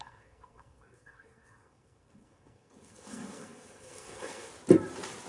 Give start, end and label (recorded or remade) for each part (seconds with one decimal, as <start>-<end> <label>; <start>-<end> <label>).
0.0-4.5 remade; 4.5-5.3 recorded

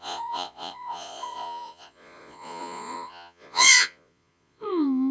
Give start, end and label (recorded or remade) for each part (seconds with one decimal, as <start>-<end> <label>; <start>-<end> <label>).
0.0-5.1 remade